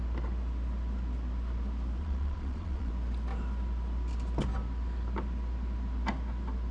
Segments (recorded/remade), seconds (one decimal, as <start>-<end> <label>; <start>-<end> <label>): 0.0-2.0 recorded; 2.0-2.9 remade; 2.9-6.7 recorded